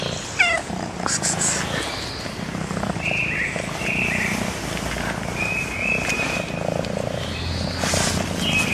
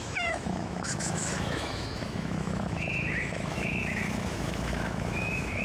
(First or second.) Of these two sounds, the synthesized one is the second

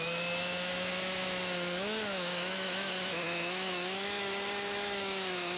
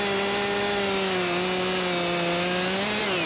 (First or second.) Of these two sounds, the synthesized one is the first